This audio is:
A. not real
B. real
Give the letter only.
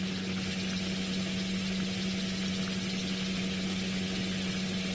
B